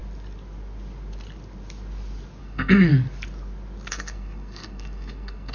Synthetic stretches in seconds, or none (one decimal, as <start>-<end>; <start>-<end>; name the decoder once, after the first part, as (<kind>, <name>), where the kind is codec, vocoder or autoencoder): 2.4-2.9 (codec, SNAC); 3.9-5.5